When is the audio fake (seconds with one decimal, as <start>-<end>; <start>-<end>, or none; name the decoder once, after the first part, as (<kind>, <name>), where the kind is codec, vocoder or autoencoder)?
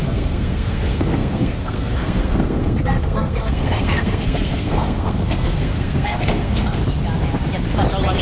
0.0-6.8 (codec, SNAC)